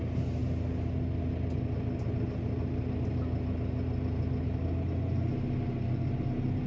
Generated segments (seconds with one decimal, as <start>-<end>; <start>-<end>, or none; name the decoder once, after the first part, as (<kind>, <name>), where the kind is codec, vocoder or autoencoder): none